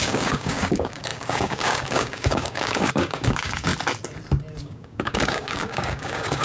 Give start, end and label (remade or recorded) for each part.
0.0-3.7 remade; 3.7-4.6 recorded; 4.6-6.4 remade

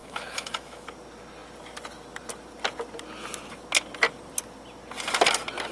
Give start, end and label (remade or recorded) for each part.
0.0-0.9 remade; 0.9-5.7 recorded